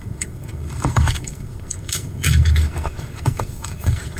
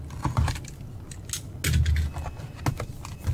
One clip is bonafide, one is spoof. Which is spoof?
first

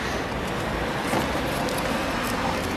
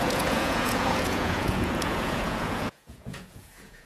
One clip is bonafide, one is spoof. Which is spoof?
second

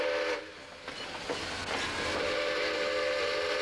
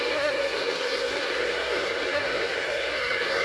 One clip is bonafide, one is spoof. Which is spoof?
second